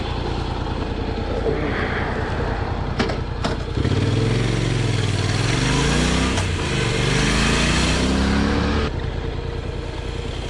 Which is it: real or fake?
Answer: real